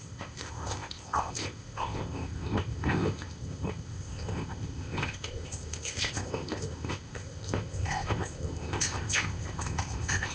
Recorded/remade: remade